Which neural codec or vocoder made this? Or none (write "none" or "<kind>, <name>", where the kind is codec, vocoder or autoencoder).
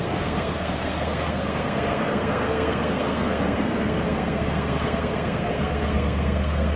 codec, SNAC